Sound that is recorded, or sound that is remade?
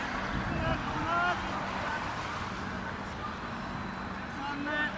recorded